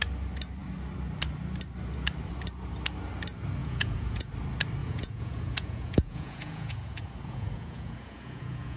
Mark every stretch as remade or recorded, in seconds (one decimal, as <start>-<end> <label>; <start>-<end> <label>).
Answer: 0.0-3.6 recorded; 3.6-4.3 remade; 4.3-4.8 recorded; 4.8-8.8 remade